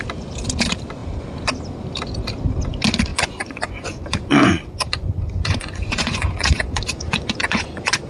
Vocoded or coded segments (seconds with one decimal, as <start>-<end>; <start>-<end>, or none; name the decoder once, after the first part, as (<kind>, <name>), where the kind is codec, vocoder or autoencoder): 3.1-8.1 (vocoder, Vocos)